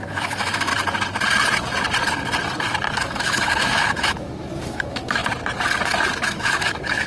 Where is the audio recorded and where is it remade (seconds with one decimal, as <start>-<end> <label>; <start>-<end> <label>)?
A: 0.0-0.7 remade; 0.7-2.9 recorded; 2.9-5.2 remade; 5.2-6.1 recorded; 6.1-7.1 remade

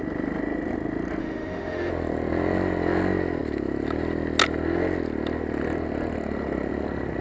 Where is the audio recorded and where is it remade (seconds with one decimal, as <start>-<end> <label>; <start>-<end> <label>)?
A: 0.0-1.2 recorded; 1.2-1.9 remade; 1.9-7.2 recorded

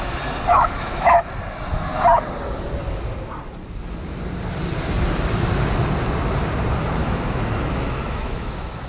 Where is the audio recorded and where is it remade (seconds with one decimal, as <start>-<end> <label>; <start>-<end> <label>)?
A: 0.0-0.5 recorded; 0.5-1.3 remade; 1.3-7.0 recorded; 7.0-8.9 remade

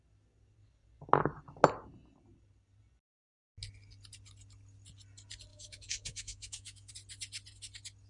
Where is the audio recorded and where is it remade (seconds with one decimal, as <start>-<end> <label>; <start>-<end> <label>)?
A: 0.0-5.5 recorded; 5.5-6.9 remade; 6.9-8.1 recorded

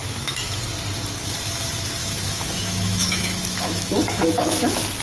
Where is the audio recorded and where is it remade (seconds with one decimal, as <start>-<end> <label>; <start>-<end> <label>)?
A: 0.0-0.6 remade; 0.6-2.0 recorded; 2.0-5.0 remade

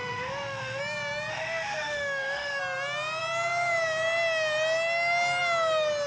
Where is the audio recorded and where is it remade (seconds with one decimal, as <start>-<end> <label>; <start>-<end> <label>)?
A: 0.0-0.8 remade; 0.8-1.3 recorded; 1.3-2.6 remade; 2.6-6.1 recorded